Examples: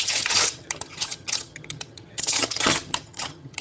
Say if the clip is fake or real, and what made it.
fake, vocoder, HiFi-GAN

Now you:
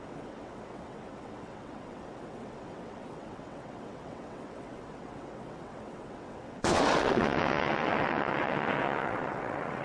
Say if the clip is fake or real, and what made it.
fake, vocoder, WaveNeXt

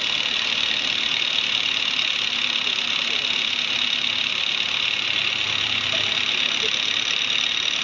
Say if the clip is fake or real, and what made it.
real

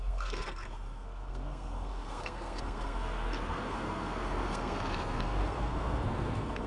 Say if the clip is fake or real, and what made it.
fake, codec, SNAC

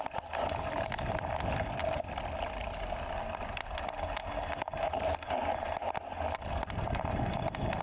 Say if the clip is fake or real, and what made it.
real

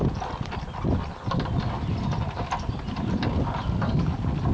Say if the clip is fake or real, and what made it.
real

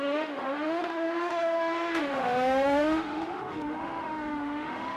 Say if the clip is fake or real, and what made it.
fake, autoencoder, DAC-VAE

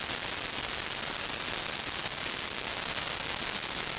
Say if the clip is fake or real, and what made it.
real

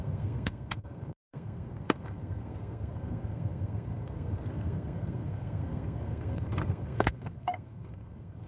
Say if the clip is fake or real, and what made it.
fake, codec, SNAC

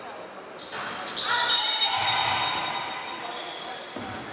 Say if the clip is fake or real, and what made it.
real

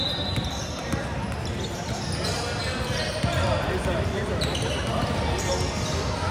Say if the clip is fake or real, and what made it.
real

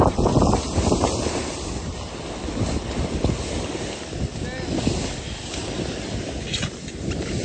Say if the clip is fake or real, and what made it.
real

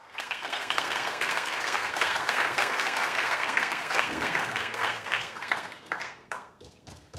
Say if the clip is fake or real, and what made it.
fake, codec, SNAC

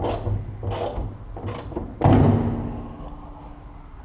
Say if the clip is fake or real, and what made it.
real